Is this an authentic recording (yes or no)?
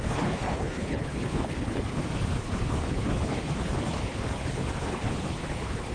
no